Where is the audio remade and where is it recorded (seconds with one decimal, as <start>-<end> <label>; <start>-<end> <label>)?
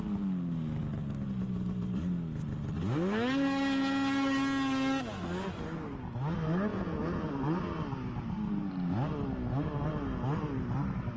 0.0-6.7 recorded; 6.7-7.3 remade; 7.3-11.2 recorded